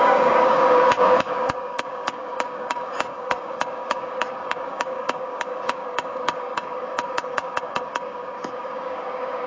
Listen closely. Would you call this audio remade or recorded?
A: remade